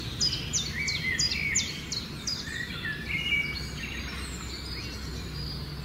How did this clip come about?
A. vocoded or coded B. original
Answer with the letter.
B